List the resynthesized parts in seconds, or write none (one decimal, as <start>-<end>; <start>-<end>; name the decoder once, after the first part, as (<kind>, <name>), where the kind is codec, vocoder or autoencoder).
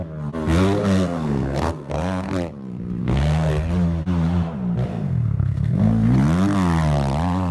0.8-2.3 (codec, SNAC); 3.0-3.5; 4.9-5.9